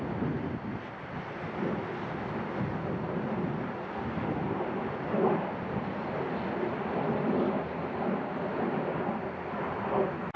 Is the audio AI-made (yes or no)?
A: no